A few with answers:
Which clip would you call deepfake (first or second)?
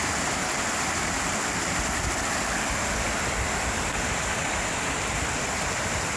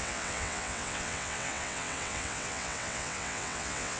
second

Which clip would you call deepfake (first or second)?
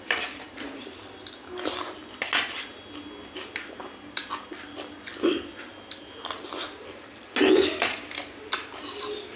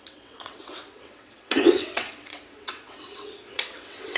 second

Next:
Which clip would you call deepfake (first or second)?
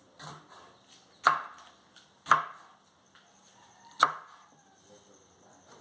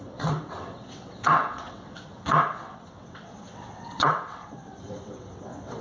second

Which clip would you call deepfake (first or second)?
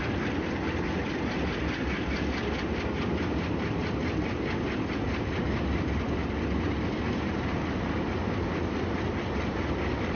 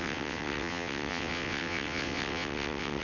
second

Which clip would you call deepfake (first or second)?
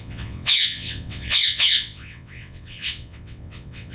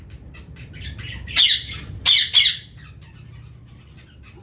first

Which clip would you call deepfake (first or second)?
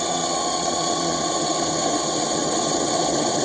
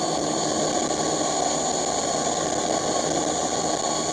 first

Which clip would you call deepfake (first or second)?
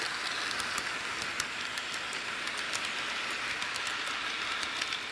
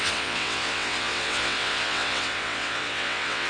second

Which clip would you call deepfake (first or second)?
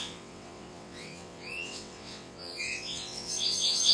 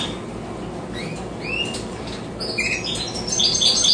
first